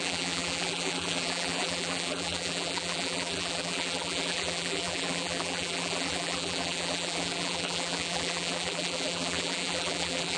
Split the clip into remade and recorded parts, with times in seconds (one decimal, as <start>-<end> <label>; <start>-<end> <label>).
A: 0.0-10.4 remade